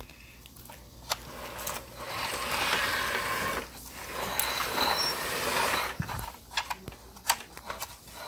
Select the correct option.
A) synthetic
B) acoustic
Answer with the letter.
B